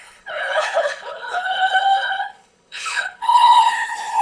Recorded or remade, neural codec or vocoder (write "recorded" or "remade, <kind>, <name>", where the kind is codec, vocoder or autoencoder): remade, codec, HILCodec